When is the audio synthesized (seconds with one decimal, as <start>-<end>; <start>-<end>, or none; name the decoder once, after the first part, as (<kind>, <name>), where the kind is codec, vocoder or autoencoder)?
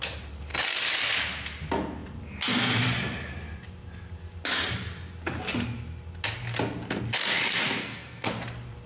7.8-8.3 (codec, SNAC)